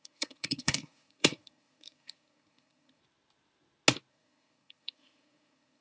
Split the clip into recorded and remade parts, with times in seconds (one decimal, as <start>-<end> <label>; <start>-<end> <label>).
0.0-3.0 remade; 3.0-4.1 recorded; 4.1-5.8 remade